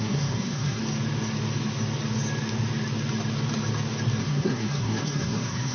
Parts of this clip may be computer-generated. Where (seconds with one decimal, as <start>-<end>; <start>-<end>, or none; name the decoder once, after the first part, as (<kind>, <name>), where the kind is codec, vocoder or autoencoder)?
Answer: 0.0-0.8 (codec, SNAC); 4.2-5.7

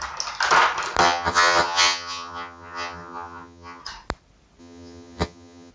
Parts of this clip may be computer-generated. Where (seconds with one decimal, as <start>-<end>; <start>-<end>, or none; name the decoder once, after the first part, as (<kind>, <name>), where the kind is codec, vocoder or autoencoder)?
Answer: 1.0-3.8 (vocoder, HiFi-GAN); 4.6-5.7

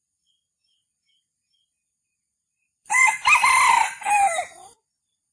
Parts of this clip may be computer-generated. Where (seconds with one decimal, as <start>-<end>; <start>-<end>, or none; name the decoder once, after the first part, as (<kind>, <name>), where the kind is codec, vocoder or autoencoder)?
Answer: none